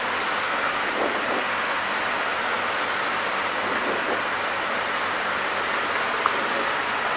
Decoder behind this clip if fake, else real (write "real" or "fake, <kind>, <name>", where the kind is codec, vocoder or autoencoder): real